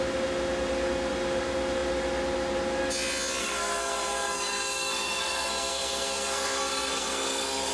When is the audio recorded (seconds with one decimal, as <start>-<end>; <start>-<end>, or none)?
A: 0.0-3.4